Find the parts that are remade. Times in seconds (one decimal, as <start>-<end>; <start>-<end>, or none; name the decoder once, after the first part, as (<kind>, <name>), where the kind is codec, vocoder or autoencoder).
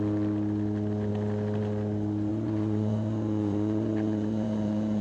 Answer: 2.3-5.0 (vocoder, Vocos)